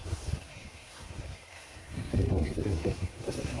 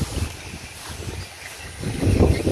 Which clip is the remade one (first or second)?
first